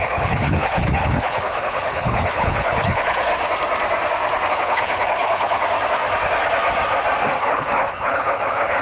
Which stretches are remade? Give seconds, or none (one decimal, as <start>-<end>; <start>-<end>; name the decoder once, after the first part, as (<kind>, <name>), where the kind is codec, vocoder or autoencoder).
0.0-3.3 (codec, HILCodec); 4.5-5.6; 7.4-8.8